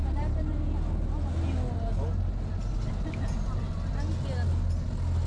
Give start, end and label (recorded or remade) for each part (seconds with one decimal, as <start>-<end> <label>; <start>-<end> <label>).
0.0-5.3 recorded